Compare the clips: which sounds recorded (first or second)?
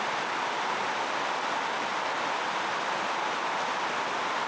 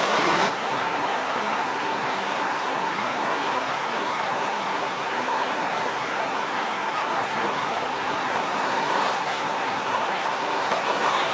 first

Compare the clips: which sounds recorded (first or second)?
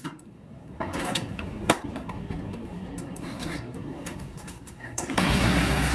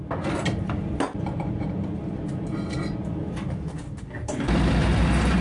second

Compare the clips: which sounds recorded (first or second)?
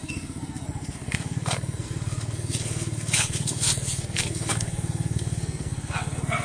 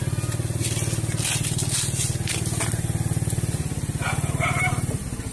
second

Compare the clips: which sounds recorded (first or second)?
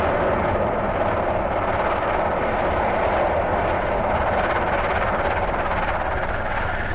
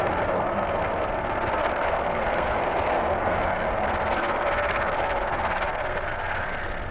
first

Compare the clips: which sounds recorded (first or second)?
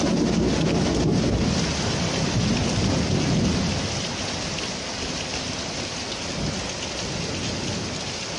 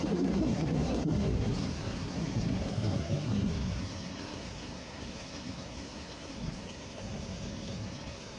first